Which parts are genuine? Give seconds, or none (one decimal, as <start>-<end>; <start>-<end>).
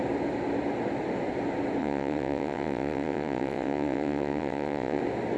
0.0-1.8; 5.0-5.4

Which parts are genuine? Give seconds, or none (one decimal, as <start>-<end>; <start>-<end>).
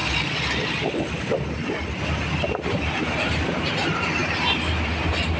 0.0-5.4